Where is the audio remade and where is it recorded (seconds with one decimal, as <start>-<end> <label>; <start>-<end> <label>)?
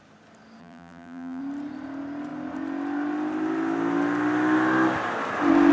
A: 0.0-0.6 recorded; 0.6-1.4 remade; 1.4-5.7 recorded